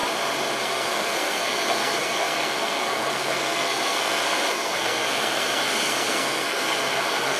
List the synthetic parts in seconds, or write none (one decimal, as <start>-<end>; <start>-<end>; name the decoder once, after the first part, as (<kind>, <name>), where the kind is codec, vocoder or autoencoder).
0.6-7.4 (codec, SNAC)